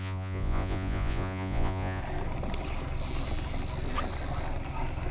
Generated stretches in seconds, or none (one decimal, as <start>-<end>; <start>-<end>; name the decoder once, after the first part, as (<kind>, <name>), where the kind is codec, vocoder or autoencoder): 0.0-2.0 (vocoder, Vocos)